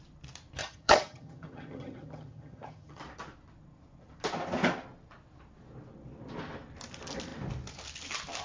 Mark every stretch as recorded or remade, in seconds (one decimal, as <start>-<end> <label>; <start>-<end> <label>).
0.0-0.6 recorded; 0.6-3.0 remade; 3.0-8.4 recorded

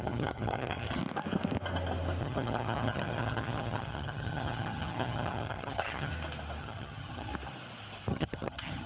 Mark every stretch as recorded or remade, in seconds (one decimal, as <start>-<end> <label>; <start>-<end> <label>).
0.0-1.0 remade; 1.0-2.2 recorded; 2.2-6.1 remade; 6.1-6.6 recorded; 6.6-7.3 remade; 7.3-8.1 recorded; 8.1-8.9 remade

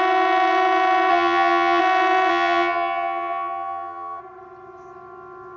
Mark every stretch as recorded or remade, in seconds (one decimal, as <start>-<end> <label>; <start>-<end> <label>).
0.0-1.1 recorded; 1.1-1.8 remade; 1.8-2.3 recorded; 2.3-4.2 remade; 4.2-5.6 recorded

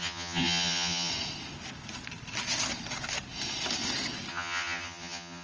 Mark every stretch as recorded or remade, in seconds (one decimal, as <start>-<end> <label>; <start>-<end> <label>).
0.0-1.1 remade; 1.1-4.3 recorded; 4.3-5.4 remade

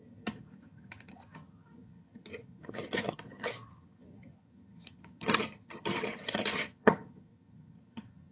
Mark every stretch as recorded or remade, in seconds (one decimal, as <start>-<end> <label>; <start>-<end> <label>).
0.0-8.3 remade

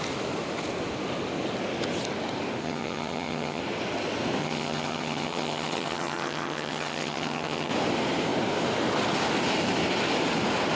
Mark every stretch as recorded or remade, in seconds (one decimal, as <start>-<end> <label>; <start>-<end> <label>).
0.0-2.6 recorded; 2.6-3.6 remade; 3.6-4.4 recorded; 4.4-7.7 remade; 7.7-10.8 recorded

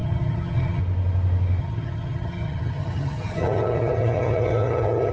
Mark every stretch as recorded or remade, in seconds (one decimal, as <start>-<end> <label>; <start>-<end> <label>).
0.0-0.8 remade; 0.8-1.6 recorded; 1.6-5.1 remade